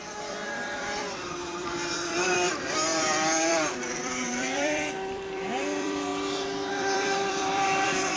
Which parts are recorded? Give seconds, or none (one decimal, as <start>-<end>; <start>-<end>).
6.1-6.7